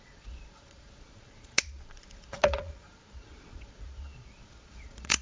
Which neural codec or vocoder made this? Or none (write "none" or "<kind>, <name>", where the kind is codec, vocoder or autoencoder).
vocoder, Vocos